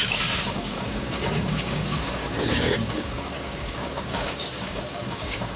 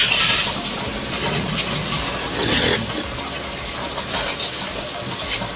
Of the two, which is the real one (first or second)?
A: second